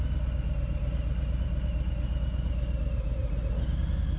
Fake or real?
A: real